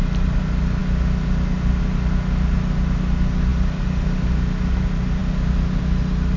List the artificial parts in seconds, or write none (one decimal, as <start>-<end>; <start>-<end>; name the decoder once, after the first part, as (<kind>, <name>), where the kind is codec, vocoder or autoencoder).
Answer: none